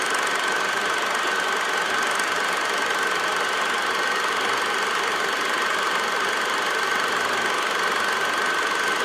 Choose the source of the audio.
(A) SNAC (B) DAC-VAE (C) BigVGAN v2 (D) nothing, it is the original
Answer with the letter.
C